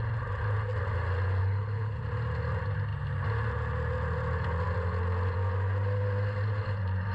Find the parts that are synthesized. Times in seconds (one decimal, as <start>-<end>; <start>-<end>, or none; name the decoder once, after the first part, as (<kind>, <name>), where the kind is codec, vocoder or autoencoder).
1.4-2.0 (codec, HILCodec)

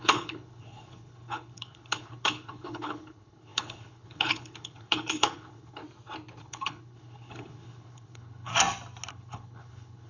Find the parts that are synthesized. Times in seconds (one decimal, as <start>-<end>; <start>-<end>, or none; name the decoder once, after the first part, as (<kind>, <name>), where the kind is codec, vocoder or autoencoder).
0.0-5.8 (codec, HILCodec); 6.4-8.5; 9.1-10.1

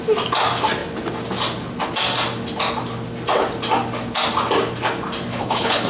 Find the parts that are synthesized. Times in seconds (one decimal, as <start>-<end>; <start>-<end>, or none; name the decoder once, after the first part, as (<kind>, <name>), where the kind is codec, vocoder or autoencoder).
5.3-5.9 (codec, HILCodec)

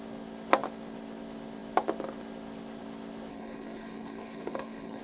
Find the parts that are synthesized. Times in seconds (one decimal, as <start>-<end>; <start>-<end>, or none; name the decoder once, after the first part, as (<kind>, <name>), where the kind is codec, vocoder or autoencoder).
3.3-5.0 (codec, HILCodec)

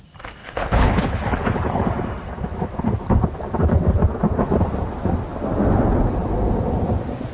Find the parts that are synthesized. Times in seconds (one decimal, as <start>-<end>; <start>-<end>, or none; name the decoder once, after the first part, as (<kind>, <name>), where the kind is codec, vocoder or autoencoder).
0.4-1.9 (codec, HILCodec)

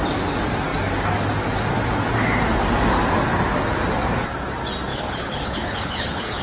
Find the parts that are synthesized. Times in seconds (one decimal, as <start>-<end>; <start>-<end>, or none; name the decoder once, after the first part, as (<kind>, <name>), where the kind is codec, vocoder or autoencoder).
4.9-6.4 (codec, HILCodec)